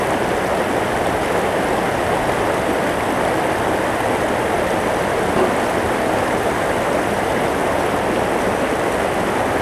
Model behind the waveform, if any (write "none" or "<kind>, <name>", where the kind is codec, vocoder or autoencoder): none